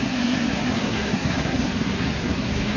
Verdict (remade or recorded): remade